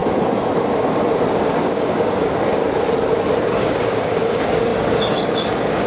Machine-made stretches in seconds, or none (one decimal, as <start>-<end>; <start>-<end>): 1.3-2.6; 3.6-5.9